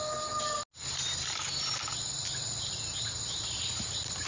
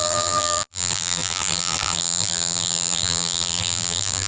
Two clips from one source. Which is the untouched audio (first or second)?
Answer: first